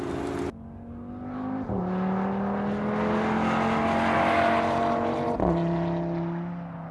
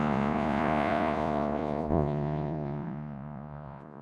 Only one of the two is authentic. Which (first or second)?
first